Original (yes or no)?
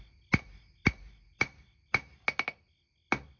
yes